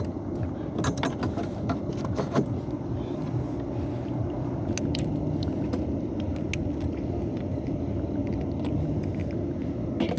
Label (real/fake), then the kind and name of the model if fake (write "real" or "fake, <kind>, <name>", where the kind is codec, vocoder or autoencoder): real